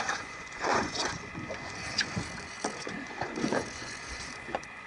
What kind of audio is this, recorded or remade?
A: remade